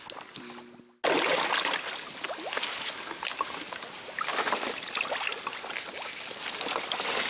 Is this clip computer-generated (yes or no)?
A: no